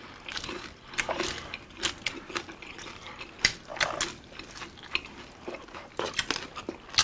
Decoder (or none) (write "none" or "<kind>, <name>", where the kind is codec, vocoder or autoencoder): none